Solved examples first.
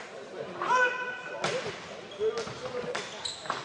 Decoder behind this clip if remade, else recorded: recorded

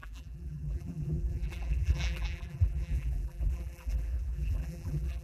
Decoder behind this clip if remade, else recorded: remade, vocoder, BigVGAN v2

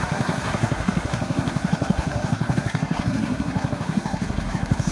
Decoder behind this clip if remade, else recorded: remade, codec, SNAC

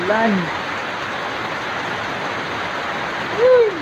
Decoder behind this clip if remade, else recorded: recorded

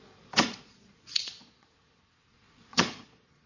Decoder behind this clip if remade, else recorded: remade, vocoder, Vocos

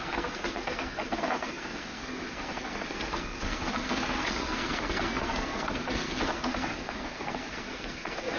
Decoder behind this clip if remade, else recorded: remade, codec, SNAC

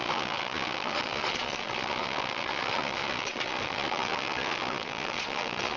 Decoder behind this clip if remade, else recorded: remade, vocoder, Vocos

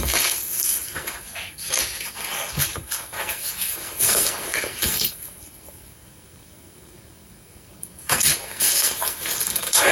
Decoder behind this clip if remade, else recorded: remade, codec, SNAC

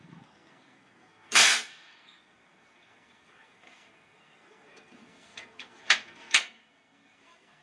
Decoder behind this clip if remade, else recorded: remade, codec, SNAC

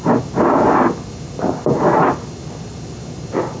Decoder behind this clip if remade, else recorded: recorded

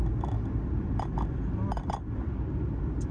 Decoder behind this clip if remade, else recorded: recorded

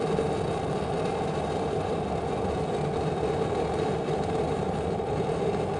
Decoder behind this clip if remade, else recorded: recorded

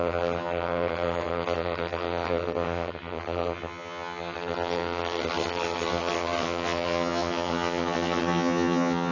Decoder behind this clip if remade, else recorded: remade, vocoder, HiFi-GAN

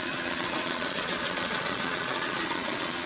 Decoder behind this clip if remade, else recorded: remade, vocoder, Vocos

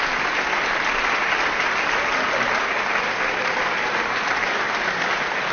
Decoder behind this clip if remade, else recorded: recorded